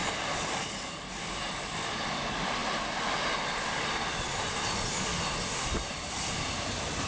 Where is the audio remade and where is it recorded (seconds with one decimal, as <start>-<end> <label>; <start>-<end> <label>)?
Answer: 0.0-7.1 recorded